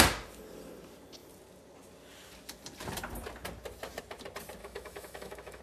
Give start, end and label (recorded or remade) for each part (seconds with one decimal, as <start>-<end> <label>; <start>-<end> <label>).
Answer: 0.0-4.6 recorded; 4.6-5.6 remade